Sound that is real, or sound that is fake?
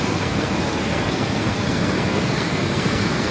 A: fake